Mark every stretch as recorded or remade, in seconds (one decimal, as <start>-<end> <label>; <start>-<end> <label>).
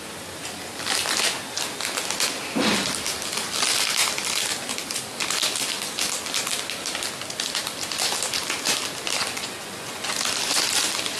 0.0-9.2 recorded; 9.2-10.1 remade; 10.1-11.2 recorded